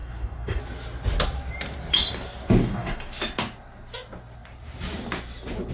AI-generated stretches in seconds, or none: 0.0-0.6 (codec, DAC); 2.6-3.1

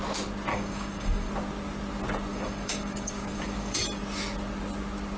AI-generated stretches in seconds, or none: 0.5-1.3 (codec, DAC); 2.3-3.8

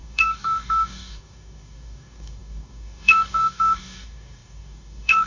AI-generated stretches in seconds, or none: 0.0-5.3 (codec, DAC)